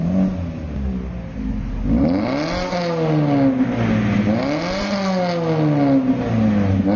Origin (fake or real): real